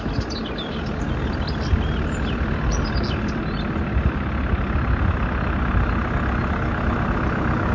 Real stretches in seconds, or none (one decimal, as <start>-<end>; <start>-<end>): 0.0-7.7